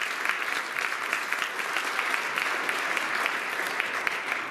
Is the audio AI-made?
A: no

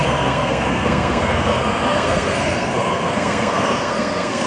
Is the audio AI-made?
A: yes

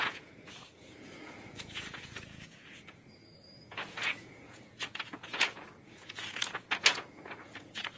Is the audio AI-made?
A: yes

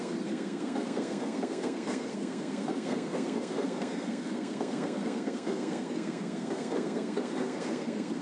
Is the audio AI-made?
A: yes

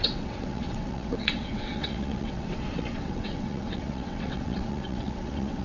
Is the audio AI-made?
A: yes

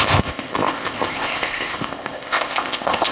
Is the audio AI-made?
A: yes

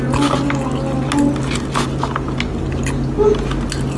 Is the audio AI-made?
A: no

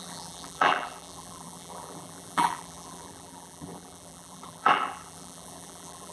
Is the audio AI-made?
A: yes